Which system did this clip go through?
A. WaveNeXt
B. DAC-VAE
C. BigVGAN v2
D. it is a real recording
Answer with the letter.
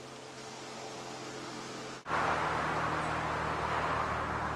D